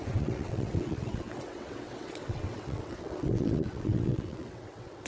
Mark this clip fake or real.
fake